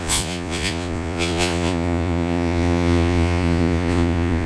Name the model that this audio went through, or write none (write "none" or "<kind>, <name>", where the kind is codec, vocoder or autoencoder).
vocoder, Vocos